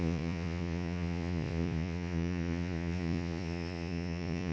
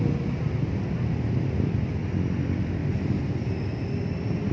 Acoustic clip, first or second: second